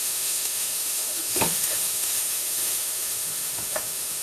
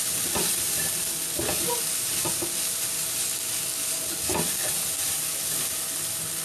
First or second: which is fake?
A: first